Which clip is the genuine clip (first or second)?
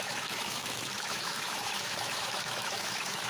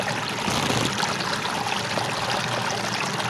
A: second